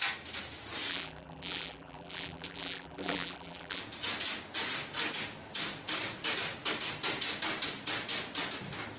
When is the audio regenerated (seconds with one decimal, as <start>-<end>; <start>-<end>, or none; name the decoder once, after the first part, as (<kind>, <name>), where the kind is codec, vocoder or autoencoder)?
0.9-3.8 (vocoder, BigVGAN v2)